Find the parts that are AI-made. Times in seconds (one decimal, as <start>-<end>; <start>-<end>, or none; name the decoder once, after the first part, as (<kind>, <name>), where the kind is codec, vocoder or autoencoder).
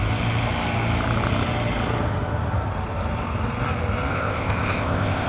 4.1-5.3 (codec, ZipCodec)